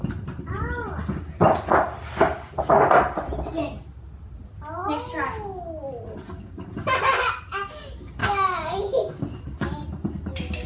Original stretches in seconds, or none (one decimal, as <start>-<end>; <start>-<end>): 0.0-8.2; 9.2-10.7